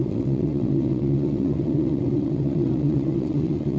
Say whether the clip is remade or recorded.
remade